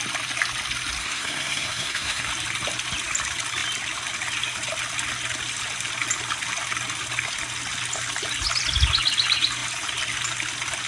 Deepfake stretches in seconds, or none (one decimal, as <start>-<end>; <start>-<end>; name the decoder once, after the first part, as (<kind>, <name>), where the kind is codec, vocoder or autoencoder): 1.0-2.2 (codec, SNAC)